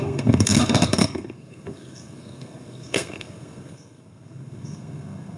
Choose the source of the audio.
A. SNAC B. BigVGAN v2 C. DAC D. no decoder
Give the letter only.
A